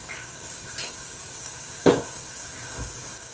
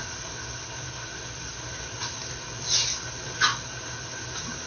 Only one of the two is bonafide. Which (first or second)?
second